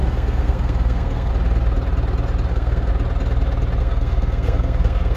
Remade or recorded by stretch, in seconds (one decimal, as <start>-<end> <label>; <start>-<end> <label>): 0.0-1.3 remade; 1.3-2.5 recorded; 2.5-2.9 remade; 2.9-3.8 recorded; 3.8-5.2 remade